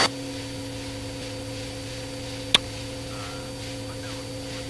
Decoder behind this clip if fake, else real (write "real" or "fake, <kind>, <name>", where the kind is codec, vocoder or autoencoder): real